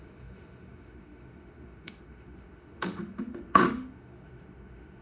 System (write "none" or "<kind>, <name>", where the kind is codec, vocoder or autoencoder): autoencoder, DAC-VAE